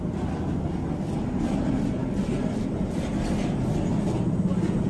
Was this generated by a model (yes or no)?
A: no